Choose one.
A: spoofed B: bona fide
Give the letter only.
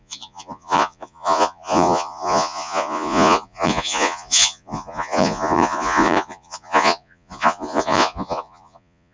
A